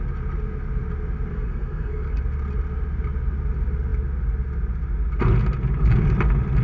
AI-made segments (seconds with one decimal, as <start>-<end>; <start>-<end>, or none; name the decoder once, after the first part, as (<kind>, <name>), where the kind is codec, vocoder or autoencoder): 1.3-2.2 (codec, SNAC)